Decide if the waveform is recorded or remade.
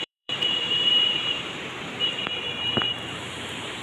remade